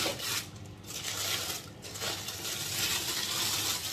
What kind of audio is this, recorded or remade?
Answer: recorded